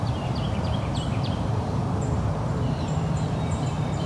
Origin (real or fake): fake